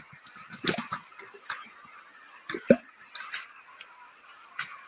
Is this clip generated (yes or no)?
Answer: no